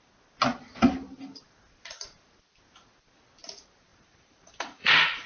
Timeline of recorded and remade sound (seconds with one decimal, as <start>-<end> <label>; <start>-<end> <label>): 0.0-3.9 recorded; 3.9-5.3 remade